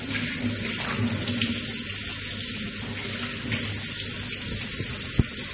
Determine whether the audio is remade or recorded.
recorded